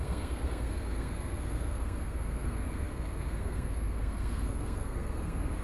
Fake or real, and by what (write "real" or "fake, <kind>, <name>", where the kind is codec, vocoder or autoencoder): fake, codec, SNAC